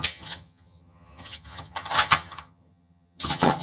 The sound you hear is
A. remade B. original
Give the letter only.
A